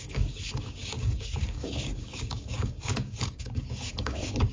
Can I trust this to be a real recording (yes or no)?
no